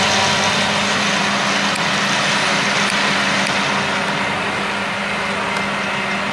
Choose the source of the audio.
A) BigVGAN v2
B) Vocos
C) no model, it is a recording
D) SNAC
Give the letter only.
C